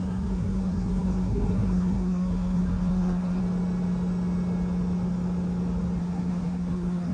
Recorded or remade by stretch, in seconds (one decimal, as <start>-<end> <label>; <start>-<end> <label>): 0.0-3.4 remade; 3.4-6.0 recorded; 6.0-7.1 remade